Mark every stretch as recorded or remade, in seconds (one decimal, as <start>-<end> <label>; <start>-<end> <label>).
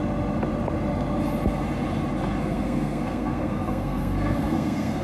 0.0-2.4 recorded; 2.4-5.0 remade